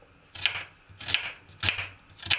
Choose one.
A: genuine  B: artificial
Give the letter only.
A